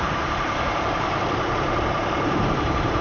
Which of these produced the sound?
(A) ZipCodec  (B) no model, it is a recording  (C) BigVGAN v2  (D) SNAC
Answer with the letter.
C